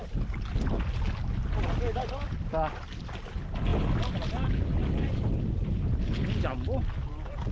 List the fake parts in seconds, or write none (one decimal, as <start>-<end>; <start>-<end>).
none